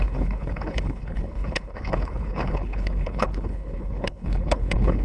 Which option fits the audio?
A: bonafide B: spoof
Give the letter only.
B